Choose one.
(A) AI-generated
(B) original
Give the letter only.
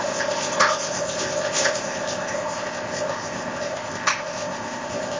A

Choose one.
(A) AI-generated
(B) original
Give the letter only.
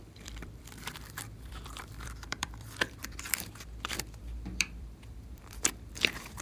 A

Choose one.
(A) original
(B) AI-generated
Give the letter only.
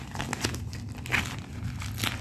A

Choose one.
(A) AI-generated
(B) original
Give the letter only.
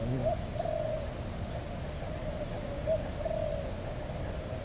B